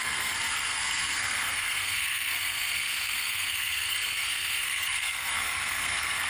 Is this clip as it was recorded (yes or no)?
no